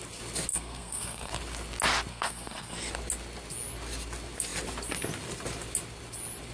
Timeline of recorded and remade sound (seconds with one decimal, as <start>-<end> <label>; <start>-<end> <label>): 0.0-0.5 recorded; 0.5-1.3 remade; 1.3-2.1 recorded; 2.1-2.9 remade; 2.9-6.5 recorded